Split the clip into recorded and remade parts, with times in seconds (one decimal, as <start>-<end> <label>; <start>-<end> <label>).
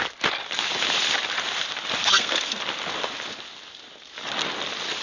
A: 0.0-2.0 recorded; 2.0-2.6 remade; 2.6-5.0 recorded